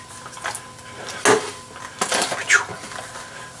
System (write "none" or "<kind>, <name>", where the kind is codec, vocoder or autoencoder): none